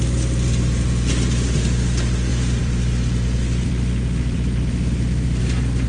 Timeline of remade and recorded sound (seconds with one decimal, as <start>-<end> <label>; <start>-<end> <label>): 0.0-2.3 recorded; 2.3-5.4 remade; 5.4-5.9 recorded